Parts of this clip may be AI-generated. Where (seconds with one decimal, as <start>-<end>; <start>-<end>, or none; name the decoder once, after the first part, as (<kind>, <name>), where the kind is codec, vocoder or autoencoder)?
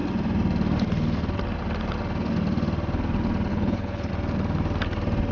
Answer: 3.5-4.1 (codec, HILCodec)